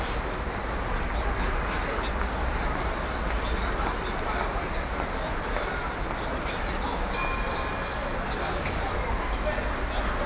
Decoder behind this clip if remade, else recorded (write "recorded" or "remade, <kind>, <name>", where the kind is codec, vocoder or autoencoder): recorded